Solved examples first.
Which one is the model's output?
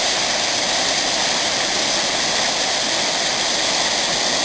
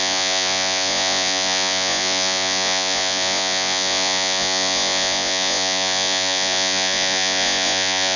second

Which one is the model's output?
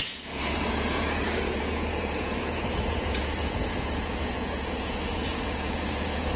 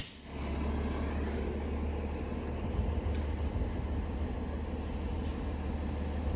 first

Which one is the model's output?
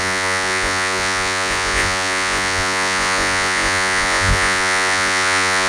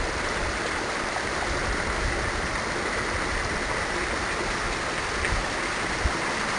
first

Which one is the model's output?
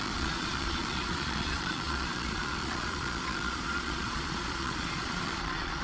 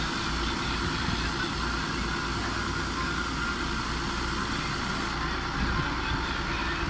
first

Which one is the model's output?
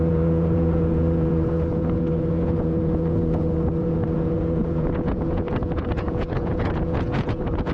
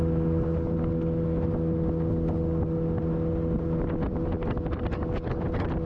first